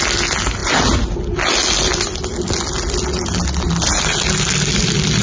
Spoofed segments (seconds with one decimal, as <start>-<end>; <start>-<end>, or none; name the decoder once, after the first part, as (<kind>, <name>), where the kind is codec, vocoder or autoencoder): none